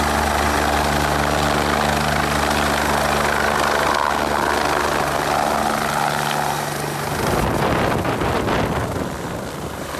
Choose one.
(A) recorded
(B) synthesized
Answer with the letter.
A